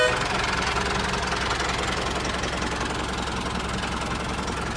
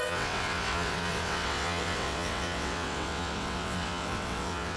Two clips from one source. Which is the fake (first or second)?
second